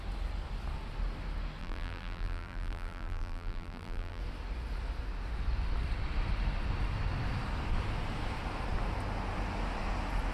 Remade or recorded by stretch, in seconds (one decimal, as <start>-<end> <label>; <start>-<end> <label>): 0.0-1.6 recorded; 1.6-4.2 remade; 4.2-10.3 recorded